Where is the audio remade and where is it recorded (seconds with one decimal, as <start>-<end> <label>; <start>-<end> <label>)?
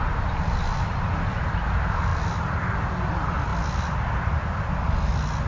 0.0-0.7 recorded; 0.7-1.5 remade; 1.5-2.1 recorded; 2.1-3.1 remade; 3.1-5.5 recorded